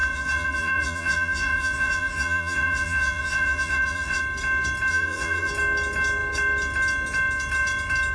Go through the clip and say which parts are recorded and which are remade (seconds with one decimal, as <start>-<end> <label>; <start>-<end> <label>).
0.0-4.2 remade; 4.2-4.9 recorded; 4.9-5.5 remade; 5.5-8.1 recorded